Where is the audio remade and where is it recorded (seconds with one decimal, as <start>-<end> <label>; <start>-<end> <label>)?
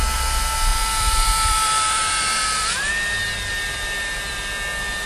0.0-0.7 recorded; 0.7-2.9 remade; 2.9-5.1 recorded